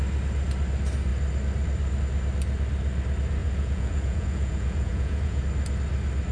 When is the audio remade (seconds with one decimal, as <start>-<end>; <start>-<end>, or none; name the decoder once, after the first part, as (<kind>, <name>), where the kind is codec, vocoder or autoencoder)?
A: 3.4-5.4 (vocoder, Vocos)